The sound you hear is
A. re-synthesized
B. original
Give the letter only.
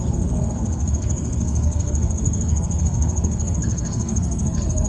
A